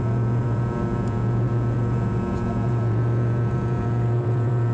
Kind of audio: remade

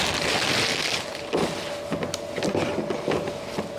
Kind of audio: recorded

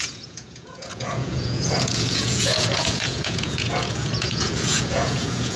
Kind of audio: remade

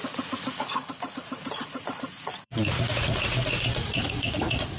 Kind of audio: remade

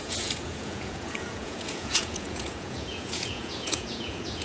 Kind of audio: remade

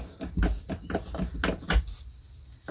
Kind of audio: recorded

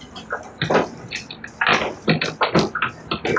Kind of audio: recorded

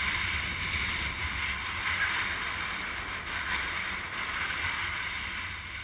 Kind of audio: recorded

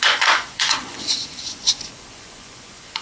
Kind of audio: remade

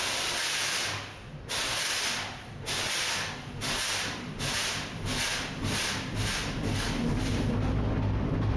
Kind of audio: recorded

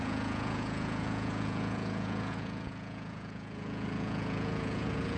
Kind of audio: remade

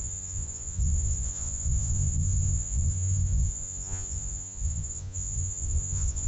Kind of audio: remade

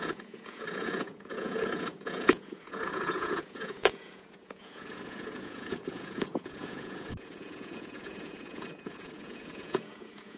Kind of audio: remade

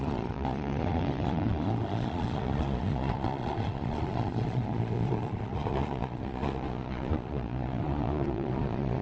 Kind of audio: remade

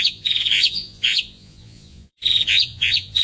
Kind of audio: remade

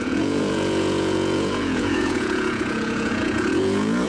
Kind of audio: remade